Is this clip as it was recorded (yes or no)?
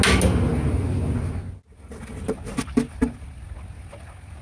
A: yes